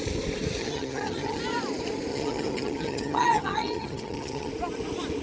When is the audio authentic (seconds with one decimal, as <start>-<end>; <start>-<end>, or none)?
0.0-0.6; 1.4-2.1; 4.5-5.2